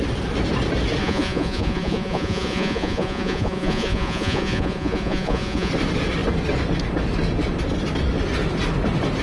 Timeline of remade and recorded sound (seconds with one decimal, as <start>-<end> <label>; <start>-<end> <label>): 0.0-1.0 recorded; 1.0-5.7 remade; 5.7-9.2 recorded